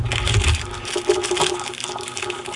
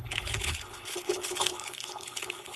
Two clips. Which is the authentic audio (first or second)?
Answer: first